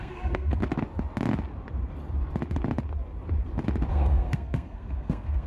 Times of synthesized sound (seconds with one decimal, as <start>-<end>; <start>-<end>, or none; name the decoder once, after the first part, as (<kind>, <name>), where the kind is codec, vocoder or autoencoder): 0.0-0.6 (codec, SNAC); 3.9-5.5

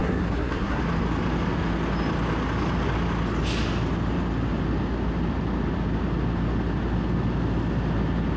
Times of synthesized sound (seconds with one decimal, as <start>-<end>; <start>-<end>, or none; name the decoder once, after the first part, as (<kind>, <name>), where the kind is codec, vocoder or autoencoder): 0.0-0.8 (codec, SNAC)

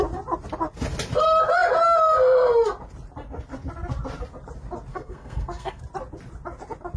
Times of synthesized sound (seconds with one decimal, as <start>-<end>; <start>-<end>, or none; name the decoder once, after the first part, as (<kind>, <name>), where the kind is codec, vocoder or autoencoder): 4.9-5.8 (codec, SNAC)